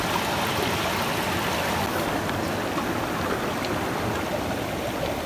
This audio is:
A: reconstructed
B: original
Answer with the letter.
B